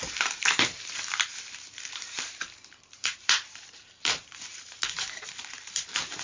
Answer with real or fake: fake